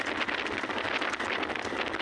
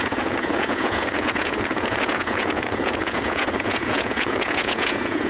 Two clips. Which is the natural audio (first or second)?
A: first